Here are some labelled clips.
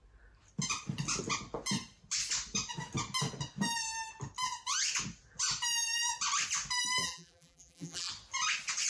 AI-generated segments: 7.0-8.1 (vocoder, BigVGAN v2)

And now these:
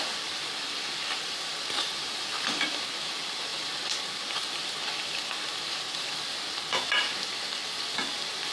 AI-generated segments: 0.0-8.5 (vocoder, BigVGAN v2)

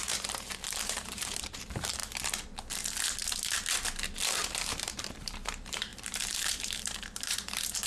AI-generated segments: 0.0-2.0 (vocoder, BigVGAN v2); 4.6-7.9

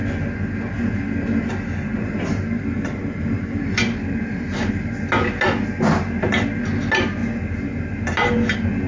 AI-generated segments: 1.9-4.9 (vocoder, BigVGAN v2)

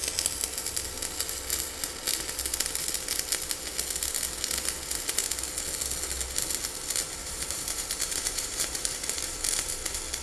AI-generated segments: 7.2-9.7 (vocoder, BigVGAN v2)